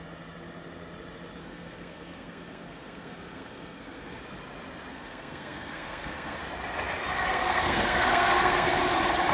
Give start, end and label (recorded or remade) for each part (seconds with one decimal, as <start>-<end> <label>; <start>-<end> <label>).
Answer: 0.0-1.4 recorded; 1.4-4.2 remade; 4.2-4.9 recorded; 4.9-6.4 remade; 6.4-7.3 recorded; 7.3-8.8 remade; 8.8-9.3 recorded